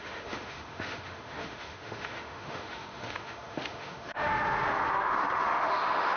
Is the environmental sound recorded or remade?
remade